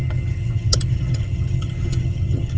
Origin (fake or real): fake